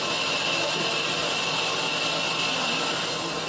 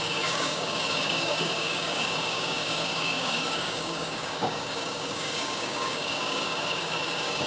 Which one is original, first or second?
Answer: first